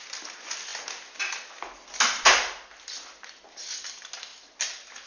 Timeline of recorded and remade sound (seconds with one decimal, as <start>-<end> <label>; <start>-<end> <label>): 0.0-5.1 recorded